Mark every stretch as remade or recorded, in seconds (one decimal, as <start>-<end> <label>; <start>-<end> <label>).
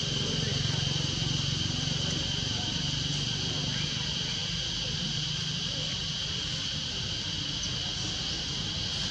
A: 0.0-9.1 recorded